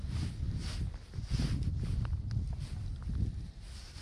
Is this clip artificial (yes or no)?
no